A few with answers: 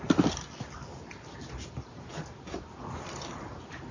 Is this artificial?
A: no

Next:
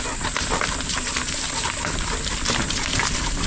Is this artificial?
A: no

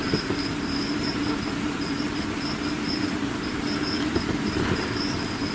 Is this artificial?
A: no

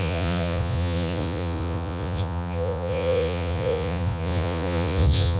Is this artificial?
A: yes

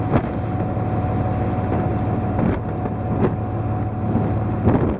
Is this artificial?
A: no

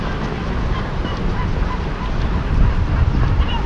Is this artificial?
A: no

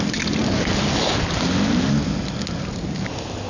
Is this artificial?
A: no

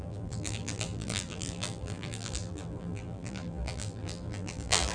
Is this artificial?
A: yes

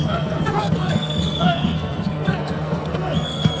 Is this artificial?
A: yes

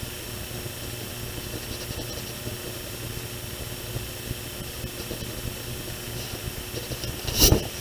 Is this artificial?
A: no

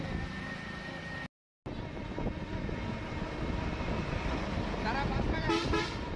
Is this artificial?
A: no